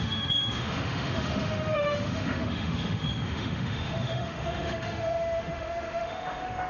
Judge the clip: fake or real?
fake